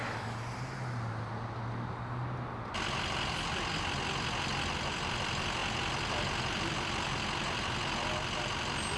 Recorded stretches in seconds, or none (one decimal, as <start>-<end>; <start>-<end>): 0.0-9.0